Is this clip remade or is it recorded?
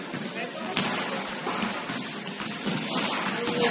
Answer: recorded